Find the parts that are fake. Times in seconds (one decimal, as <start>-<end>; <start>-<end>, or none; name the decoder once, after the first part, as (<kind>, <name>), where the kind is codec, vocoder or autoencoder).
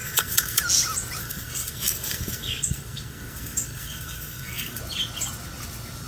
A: 0.0-0.6 (codec, SNAC); 1.2-4.8